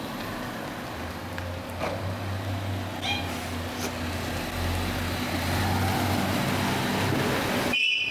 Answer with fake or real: real